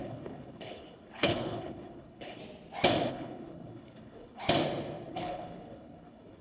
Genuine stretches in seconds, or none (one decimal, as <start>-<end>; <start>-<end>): 2.4-3.1; 4.4-5.1